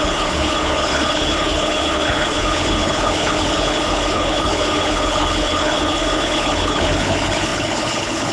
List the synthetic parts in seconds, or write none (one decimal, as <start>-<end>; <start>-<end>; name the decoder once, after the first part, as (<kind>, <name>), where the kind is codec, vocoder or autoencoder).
0.0-8.3 (codec, HILCodec)